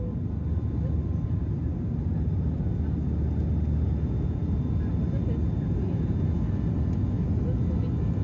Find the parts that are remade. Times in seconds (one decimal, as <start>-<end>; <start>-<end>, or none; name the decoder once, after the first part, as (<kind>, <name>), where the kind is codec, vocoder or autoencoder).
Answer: none